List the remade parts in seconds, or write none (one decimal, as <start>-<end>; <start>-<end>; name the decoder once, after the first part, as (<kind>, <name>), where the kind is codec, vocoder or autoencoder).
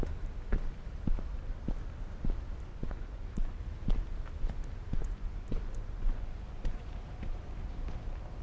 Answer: 2.7-3.6 (vocoder, Vocos); 5.0-6.9